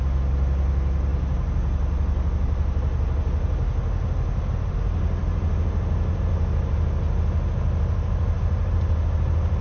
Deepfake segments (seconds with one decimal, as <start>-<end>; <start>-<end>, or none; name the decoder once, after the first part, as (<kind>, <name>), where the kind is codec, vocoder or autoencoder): none